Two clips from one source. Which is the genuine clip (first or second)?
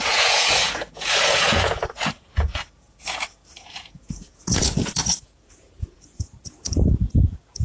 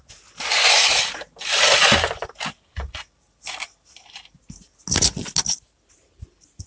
second